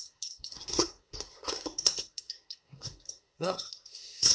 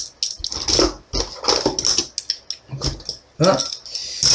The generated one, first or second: first